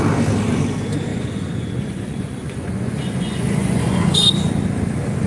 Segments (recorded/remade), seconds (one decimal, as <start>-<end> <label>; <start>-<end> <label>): 0.0-1.1 recorded; 1.1-4.3 remade; 4.3-5.3 recorded